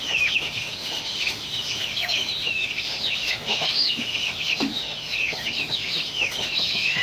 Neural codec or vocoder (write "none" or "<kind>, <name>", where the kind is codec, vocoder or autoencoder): autoencoder, DAC-VAE